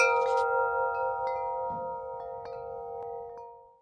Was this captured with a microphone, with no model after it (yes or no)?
yes